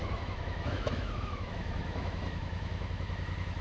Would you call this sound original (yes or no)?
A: no